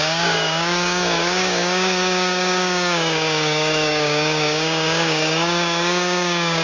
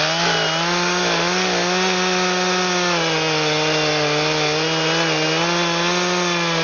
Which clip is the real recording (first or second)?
second